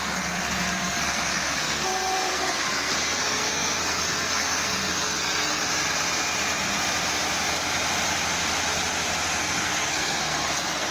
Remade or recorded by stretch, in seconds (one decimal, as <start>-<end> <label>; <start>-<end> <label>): 0.0-5.6 remade; 5.6-9.4 recorded; 9.4-10.9 remade